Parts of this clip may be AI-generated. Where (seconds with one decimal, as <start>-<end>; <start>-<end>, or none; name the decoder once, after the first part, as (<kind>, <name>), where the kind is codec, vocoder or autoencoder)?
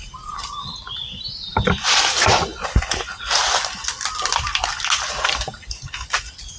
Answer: none